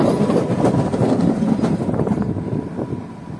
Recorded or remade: recorded